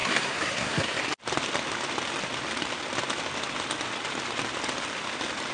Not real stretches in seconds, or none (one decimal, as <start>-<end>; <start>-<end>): 0.0-1.0